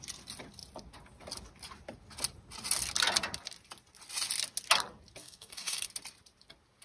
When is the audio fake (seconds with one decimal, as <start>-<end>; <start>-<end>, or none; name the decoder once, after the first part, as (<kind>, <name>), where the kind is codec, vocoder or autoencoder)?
5.2-5.9 (codec, DAC)